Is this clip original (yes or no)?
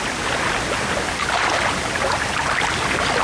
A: yes